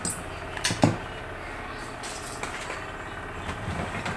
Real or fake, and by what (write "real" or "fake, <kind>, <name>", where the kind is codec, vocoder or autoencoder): real